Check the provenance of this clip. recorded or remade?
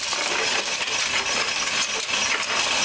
recorded